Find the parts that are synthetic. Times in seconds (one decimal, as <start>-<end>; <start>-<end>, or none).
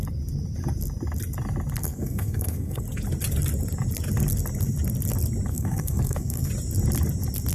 1.8-2.8; 5.5-6.5